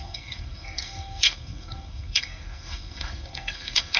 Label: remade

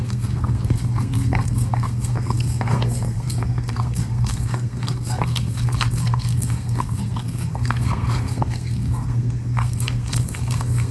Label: remade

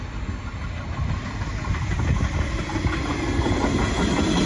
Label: recorded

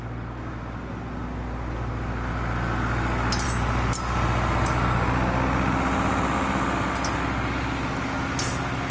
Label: recorded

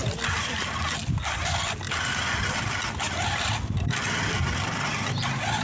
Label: recorded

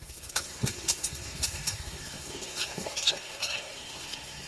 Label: remade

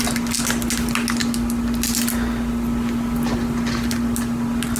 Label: recorded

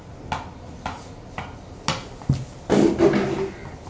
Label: recorded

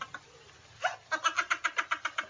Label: recorded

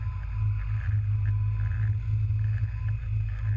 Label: recorded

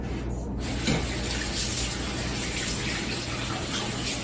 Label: recorded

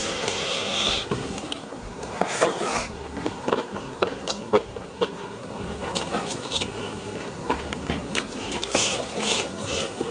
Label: remade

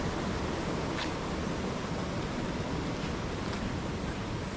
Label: recorded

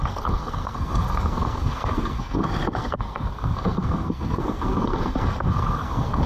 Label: remade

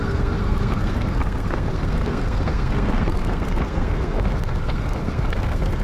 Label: remade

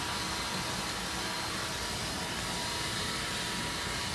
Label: recorded